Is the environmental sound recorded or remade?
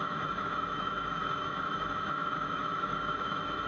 remade